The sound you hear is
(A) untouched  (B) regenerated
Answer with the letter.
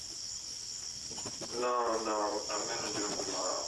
B